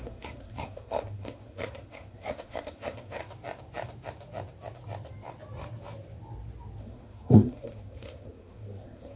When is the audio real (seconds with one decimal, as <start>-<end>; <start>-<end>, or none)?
3.2-6.8